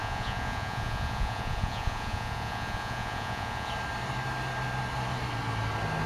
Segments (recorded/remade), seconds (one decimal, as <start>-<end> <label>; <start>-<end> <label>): 0.0-3.7 remade; 3.7-6.1 recorded